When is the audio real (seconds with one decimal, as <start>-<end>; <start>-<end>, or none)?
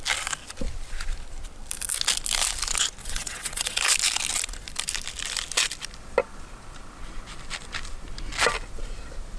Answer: 0.0-3.0; 3.8-9.4